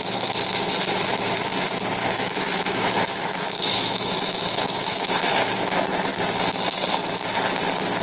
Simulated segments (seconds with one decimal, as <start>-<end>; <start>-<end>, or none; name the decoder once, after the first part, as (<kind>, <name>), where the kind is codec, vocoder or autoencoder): 2.0-5.4 (autoencoder, DAC-VAE)